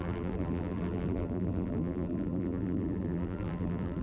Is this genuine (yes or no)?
no